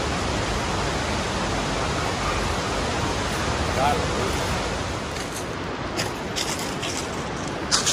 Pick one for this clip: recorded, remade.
recorded